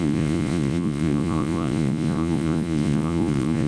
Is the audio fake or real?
fake